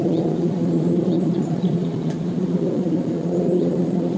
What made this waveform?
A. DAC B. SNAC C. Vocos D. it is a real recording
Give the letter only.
C